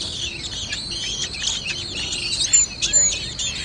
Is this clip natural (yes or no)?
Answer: yes